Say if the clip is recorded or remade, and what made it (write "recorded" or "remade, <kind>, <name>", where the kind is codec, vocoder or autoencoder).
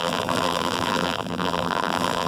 remade, vocoder, BigVGAN v2